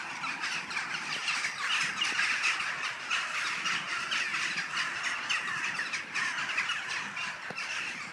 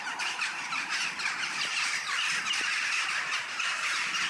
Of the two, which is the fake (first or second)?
second